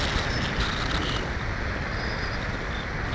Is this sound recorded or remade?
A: recorded